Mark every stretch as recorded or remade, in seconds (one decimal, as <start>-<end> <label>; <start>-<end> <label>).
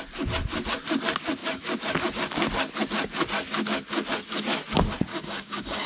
0.0-5.1 recorded; 5.1-5.9 remade